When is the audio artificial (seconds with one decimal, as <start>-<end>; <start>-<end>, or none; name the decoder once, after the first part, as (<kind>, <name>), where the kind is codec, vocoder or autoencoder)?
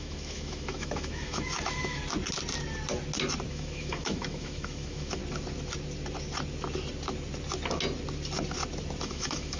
0.0-2.0 (autoencoder, DAC-VAE); 3.5-5.2; 9.0-9.6